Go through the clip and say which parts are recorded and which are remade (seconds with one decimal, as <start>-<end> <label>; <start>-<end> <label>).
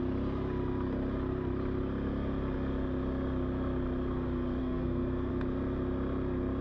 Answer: 0.0-4.6 recorded; 4.6-5.3 remade; 5.3-6.6 recorded